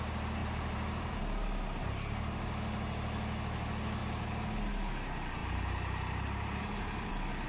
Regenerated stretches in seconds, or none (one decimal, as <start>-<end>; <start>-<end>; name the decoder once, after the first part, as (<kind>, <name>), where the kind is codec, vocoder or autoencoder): 0.4-1.2 (vocoder, BigVGAN v2); 5.4-7.1